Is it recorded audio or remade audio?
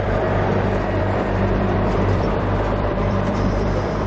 remade